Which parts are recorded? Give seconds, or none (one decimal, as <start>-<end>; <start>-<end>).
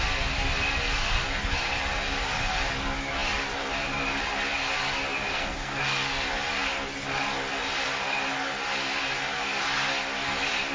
0.0-5.3; 5.8-10.7